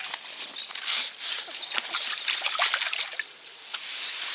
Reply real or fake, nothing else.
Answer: real